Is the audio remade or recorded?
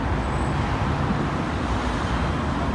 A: recorded